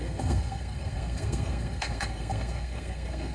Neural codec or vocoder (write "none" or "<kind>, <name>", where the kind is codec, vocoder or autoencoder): codec, SNAC